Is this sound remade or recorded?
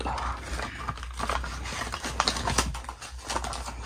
recorded